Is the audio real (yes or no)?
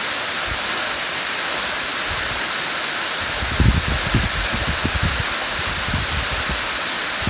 yes